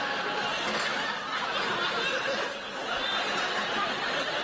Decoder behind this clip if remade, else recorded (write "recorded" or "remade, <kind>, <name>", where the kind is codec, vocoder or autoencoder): recorded